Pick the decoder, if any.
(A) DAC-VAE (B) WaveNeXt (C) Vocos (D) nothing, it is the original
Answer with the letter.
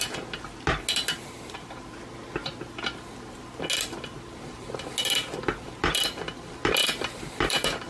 D